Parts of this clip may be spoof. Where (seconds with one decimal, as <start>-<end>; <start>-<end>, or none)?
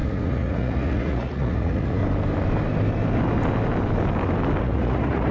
0.0-2.0; 4.6-5.3